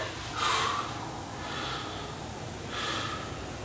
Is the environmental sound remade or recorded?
recorded